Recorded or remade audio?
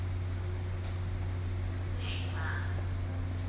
recorded